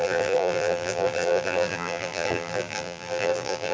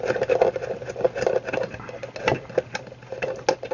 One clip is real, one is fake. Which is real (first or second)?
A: second